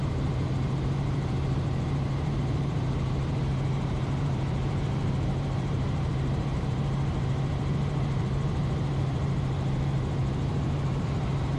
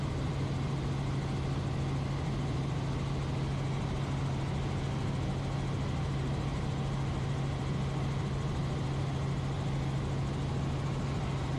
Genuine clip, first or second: second